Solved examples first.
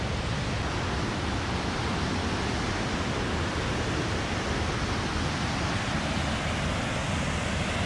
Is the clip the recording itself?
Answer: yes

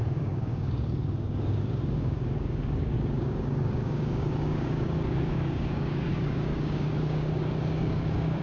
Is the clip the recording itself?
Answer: no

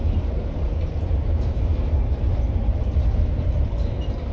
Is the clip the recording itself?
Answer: no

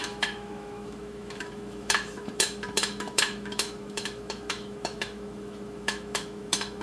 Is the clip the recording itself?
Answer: no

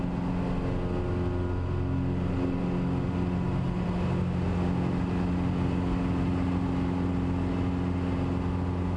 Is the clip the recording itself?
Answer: yes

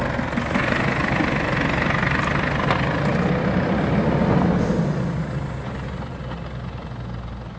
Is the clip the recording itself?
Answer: yes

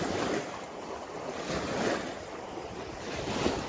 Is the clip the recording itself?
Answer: yes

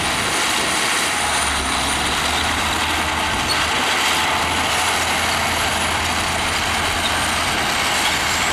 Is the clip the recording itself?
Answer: yes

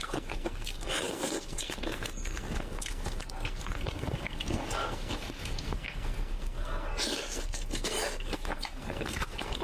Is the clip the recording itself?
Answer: no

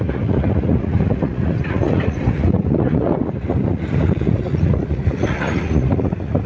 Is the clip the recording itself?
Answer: no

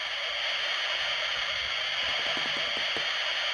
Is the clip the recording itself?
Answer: yes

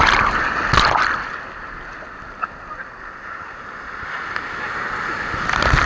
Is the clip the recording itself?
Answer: yes